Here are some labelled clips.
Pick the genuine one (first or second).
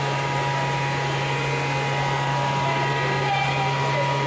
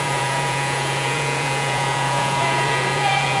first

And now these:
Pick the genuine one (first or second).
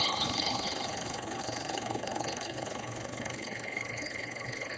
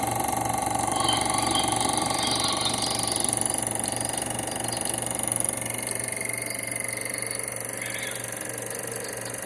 second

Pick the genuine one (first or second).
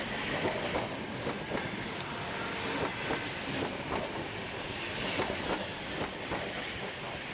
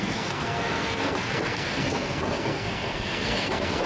first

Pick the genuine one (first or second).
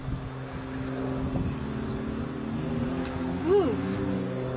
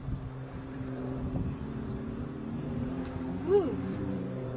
first